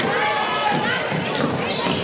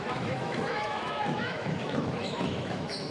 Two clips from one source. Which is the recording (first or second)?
first